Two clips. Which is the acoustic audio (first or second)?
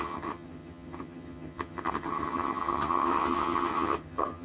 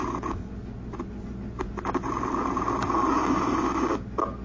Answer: second